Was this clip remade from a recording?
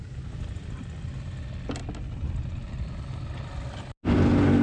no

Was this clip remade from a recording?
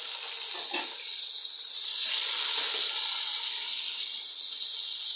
no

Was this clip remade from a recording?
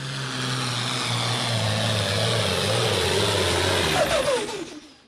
no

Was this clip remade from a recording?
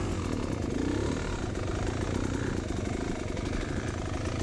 no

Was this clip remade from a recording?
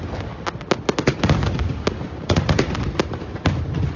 no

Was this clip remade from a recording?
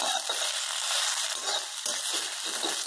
no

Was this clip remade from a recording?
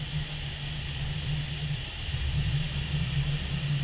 no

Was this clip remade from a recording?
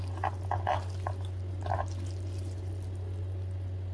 no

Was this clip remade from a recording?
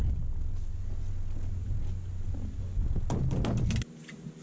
no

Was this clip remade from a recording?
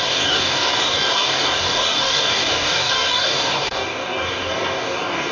yes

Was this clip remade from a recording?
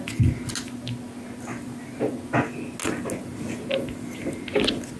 no